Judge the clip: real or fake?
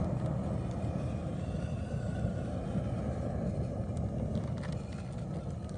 real